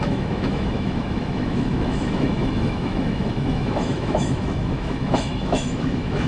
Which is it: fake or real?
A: fake